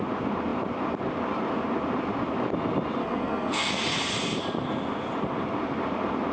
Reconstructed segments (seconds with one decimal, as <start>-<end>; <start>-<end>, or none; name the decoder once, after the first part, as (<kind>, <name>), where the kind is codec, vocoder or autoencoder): 3.0-3.7 (codec, SNAC)